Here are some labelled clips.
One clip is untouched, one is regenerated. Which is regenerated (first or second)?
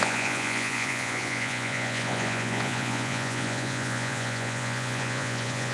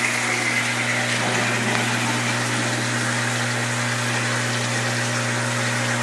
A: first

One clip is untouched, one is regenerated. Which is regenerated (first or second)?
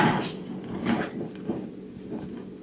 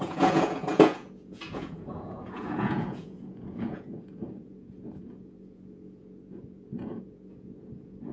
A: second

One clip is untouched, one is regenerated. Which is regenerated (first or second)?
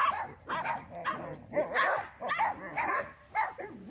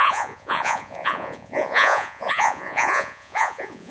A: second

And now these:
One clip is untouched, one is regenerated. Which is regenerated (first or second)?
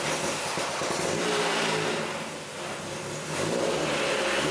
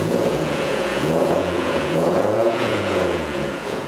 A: second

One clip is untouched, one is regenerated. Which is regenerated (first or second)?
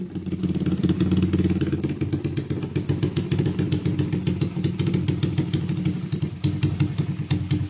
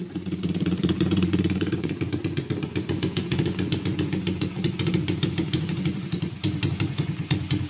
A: second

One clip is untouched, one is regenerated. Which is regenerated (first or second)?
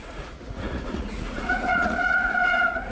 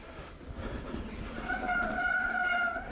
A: first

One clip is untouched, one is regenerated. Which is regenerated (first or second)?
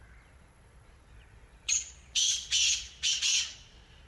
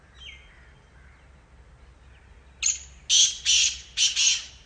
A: first